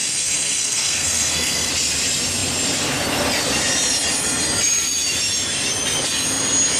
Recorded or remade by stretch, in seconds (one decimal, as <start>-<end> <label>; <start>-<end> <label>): 0.0-1.7 remade; 1.7-6.8 recorded